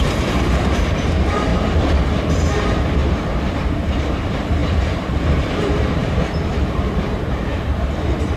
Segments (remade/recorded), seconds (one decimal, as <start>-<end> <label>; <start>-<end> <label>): 0.0-1.5 remade; 1.5-2.3 recorded; 2.3-8.4 remade